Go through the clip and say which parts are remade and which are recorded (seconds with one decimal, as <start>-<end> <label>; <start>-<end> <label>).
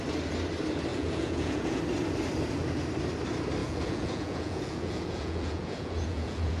0.0-0.9 recorded; 0.9-1.8 remade; 1.8-3.6 recorded; 3.6-6.6 remade